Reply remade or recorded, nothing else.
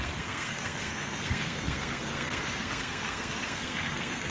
remade